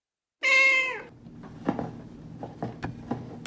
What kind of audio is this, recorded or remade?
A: recorded